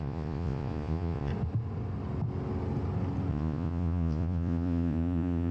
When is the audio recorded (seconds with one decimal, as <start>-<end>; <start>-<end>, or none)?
1.3-3.3